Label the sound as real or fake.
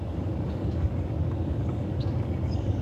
fake